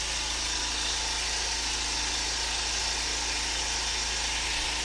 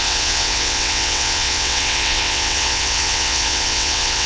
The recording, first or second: first